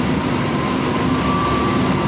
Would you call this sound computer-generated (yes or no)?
no